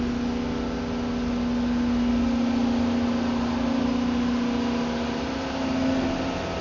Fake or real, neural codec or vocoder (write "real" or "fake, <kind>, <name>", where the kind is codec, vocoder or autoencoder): real